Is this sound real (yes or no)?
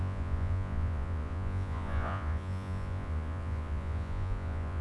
no